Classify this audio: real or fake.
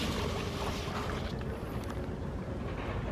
real